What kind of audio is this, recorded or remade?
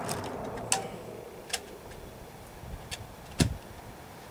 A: recorded